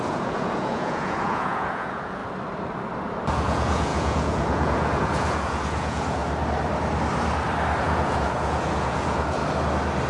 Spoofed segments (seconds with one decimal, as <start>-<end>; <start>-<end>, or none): 0.0-2.2; 3.3-6.2; 7.8-9.4